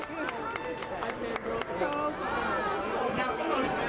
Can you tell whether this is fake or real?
real